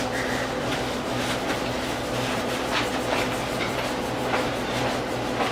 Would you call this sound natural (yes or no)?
no